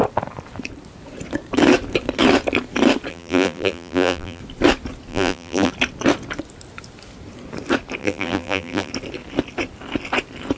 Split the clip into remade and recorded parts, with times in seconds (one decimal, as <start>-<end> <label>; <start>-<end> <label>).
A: 0.0-3.1 recorded; 3.1-4.4 remade; 4.4-5.1 recorded; 5.1-5.7 remade; 5.7-8.0 recorded; 8.0-8.9 remade; 8.9-10.6 recorded